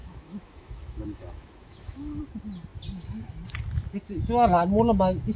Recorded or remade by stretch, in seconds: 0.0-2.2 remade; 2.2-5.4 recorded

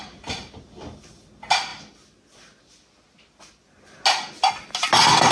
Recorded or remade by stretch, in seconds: 0.0-5.3 recorded

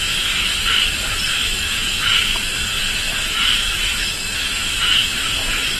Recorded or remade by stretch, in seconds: 0.0-0.5 remade; 0.5-1.3 recorded; 1.3-2.3 remade; 2.3-2.8 recorded; 2.8-5.8 remade

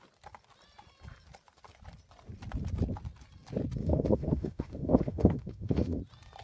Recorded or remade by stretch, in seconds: 0.0-3.8 recorded; 3.8-6.0 remade; 6.0-6.4 recorded

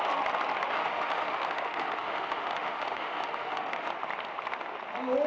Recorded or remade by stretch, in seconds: 0.0-0.7 recorded; 0.7-3.9 remade; 3.9-5.3 recorded

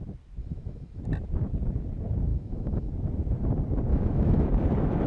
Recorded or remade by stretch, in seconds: 0.0-0.4 recorded; 0.4-1.0 remade; 1.0-2.3 recorded; 2.3-2.9 remade; 2.9-3.9 recorded; 3.9-4.5 remade; 4.5-5.1 recorded

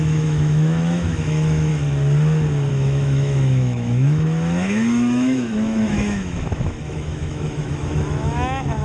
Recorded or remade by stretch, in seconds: 0.0-1.7 remade; 1.7-2.7 recorded; 2.7-8.8 remade